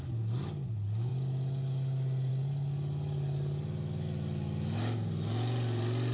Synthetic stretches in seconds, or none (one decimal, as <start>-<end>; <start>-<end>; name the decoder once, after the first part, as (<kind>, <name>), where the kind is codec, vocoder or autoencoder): none